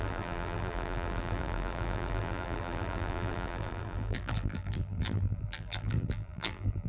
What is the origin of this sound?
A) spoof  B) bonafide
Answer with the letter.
A